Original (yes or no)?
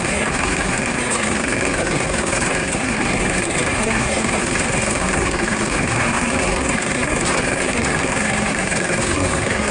no